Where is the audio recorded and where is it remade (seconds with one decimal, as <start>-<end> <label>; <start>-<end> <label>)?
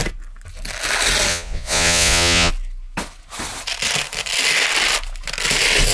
0.0-1.3 recorded; 1.3-2.5 remade; 2.5-5.9 recorded